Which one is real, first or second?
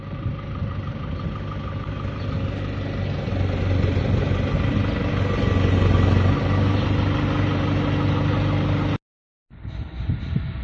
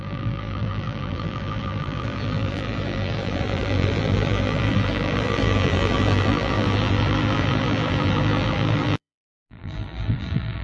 first